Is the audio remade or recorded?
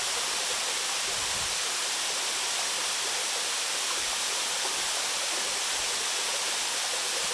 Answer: recorded